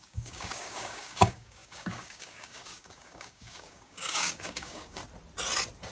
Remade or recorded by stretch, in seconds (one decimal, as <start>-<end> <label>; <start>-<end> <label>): 0.0-5.0 remade; 5.0-5.9 recorded